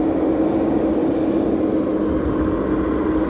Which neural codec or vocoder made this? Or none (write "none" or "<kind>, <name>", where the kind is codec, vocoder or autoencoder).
none